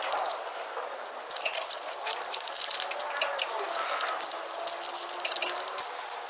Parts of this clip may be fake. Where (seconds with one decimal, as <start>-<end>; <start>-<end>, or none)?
none